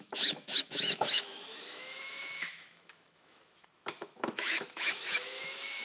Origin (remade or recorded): remade